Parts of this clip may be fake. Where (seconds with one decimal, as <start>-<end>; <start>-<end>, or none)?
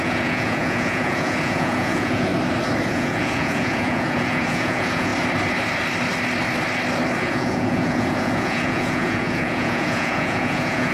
0.0-2.3; 2.9-5.1; 7.2-10.9